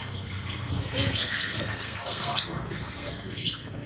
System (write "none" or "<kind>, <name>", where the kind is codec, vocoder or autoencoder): codec, SNAC